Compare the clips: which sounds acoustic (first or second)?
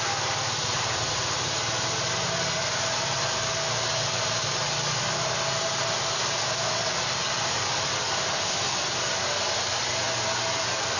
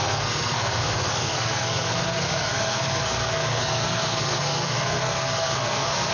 first